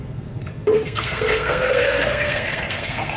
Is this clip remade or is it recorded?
remade